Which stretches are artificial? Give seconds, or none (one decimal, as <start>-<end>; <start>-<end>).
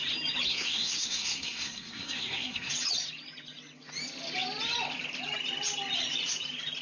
0.5-2.7